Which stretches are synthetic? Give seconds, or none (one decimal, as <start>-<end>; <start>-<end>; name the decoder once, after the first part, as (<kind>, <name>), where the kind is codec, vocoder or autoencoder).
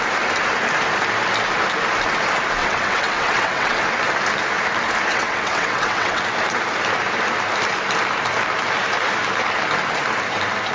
2.6-3.8 (vocoder, WaveNeXt); 5.1-6.2